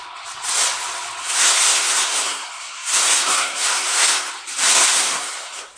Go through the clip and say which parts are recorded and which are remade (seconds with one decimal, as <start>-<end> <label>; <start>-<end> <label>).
0.0-1.2 recorded; 1.2-4.3 remade; 4.3-4.7 recorded; 4.7-5.8 remade